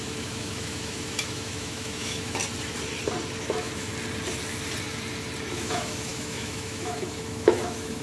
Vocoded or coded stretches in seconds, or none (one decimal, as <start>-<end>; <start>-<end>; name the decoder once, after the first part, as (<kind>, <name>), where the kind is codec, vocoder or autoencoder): 0.0-2.4 (autoencoder, DAC-VAE); 3.4-3.9; 5.5-8.0